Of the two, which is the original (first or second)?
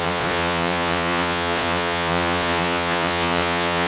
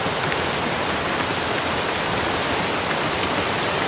second